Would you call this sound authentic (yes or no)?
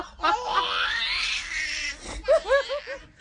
yes